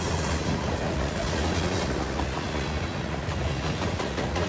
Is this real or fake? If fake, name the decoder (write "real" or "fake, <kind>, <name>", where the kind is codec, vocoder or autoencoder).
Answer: fake, vocoder, Vocos